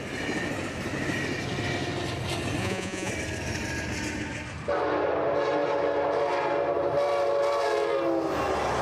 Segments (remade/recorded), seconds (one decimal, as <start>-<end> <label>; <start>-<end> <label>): 0.0-2.6 recorded; 2.6-3.1 remade; 3.1-8.8 recorded